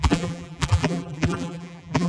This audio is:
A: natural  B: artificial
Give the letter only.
B